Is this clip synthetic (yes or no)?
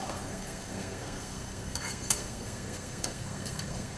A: yes